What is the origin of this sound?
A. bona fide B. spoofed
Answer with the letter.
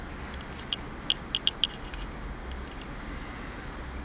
A